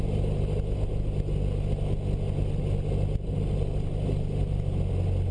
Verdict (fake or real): real